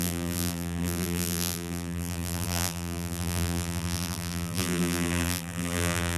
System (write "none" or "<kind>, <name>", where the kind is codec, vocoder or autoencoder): vocoder, BigVGAN v2